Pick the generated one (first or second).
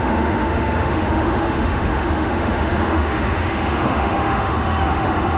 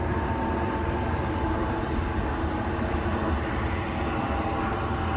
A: first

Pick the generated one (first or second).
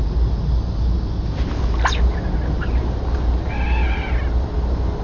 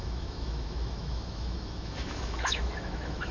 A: second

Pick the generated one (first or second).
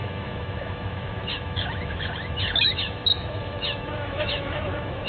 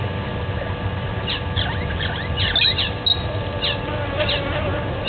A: first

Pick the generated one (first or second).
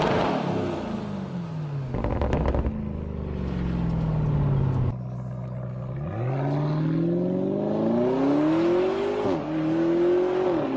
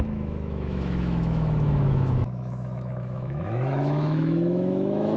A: second